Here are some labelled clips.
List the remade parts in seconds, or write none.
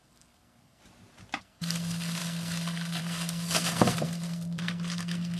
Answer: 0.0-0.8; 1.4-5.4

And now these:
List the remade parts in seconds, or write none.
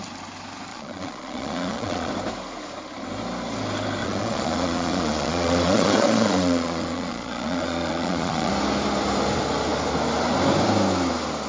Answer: 0.7-2.1; 4.0-8.5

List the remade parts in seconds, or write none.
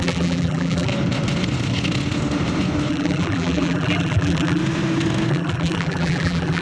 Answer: 0.0-0.9; 2.9-4.6; 5.3-6.6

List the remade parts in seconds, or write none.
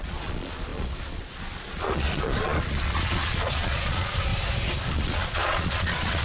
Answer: 0.0-4.3; 4.9-6.2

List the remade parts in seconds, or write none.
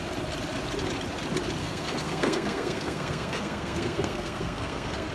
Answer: 1.6-5.1